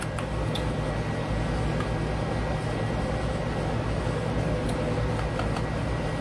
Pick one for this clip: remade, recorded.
recorded